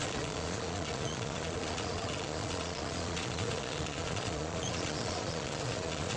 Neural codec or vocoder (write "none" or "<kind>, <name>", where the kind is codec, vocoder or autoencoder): vocoder, Vocos